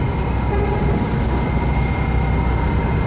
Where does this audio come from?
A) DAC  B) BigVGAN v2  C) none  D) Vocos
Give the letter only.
C